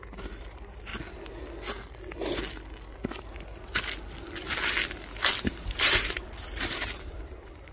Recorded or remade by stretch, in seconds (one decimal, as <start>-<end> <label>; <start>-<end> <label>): 0.0-0.9 remade; 0.9-5.4 recorded; 5.4-7.7 remade